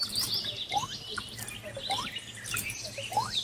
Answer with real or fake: real